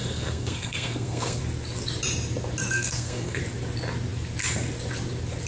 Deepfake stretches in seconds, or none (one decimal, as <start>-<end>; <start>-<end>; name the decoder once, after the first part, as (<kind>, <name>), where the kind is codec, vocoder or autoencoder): 0.0-1.4 (codec, SNAC); 2.6-3.4